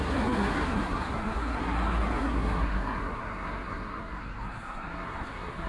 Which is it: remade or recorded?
remade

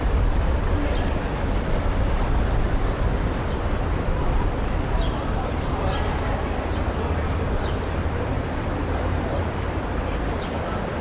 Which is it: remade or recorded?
remade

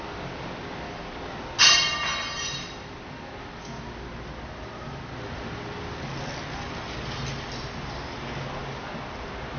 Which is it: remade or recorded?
recorded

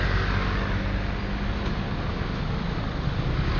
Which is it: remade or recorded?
recorded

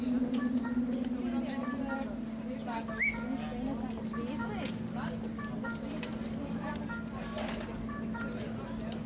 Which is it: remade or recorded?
recorded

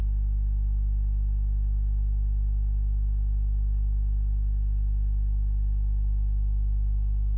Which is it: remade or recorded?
recorded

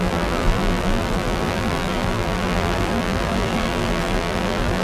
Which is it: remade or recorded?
remade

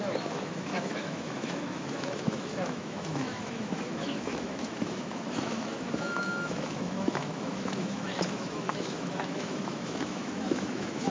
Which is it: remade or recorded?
remade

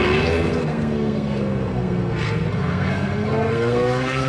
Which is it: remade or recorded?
remade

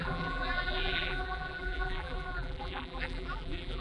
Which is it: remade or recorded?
remade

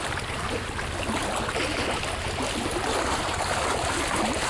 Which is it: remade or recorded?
recorded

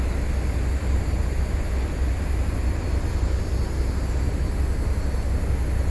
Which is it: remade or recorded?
recorded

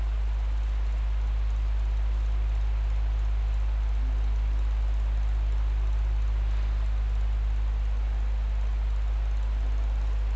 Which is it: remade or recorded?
recorded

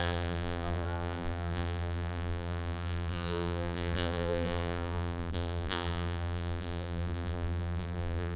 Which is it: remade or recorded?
remade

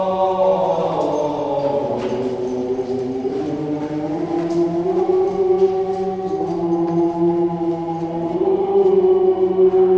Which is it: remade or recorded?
recorded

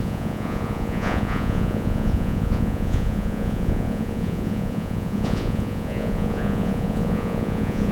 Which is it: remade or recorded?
remade